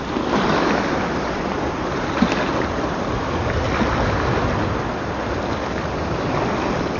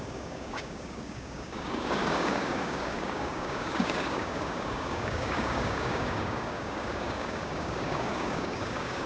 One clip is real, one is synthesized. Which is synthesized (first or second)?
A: second